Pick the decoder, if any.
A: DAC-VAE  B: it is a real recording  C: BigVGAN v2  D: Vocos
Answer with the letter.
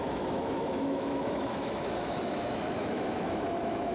A